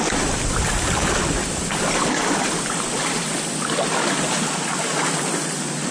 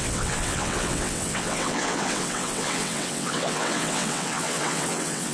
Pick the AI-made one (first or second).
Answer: second